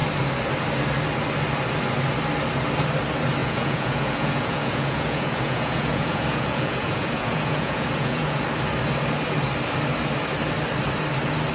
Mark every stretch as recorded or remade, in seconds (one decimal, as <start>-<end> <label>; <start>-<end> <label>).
0.0-3.4 recorded; 3.4-8.4 remade; 8.4-11.5 recorded